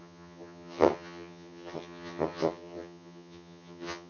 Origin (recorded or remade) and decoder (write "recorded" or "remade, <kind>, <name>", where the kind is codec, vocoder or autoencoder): remade, vocoder, HiFi-GAN